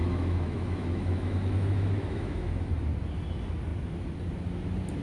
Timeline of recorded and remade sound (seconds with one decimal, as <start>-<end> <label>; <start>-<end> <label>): 0.0-2.7 remade; 2.7-5.0 recorded